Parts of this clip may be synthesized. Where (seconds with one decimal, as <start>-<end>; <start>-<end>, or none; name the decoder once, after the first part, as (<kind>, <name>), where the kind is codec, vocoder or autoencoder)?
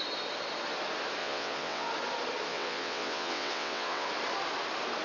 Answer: 1.2-1.9 (vocoder, WaveNeXt); 2.5-4.1